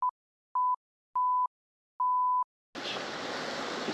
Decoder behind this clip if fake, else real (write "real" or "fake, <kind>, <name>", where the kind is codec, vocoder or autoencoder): real